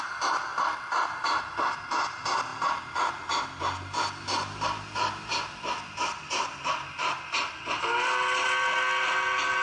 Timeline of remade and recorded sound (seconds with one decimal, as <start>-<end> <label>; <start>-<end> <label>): 0.0-9.6 recorded